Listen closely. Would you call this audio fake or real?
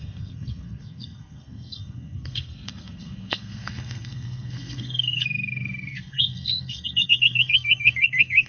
fake